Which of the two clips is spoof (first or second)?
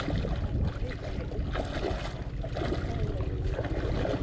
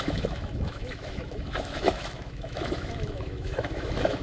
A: second